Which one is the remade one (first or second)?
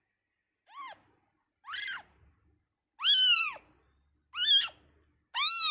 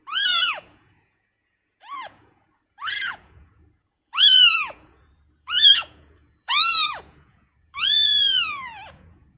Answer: second